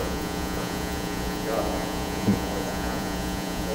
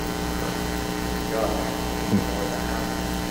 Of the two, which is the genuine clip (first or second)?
second